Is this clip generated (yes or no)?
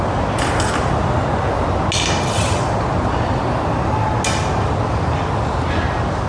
no